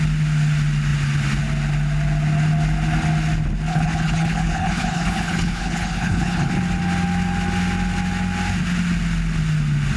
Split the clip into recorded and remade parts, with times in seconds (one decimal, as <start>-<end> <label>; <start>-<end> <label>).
0.0-3.7 recorded; 3.7-6.5 remade; 6.5-10.0 recorded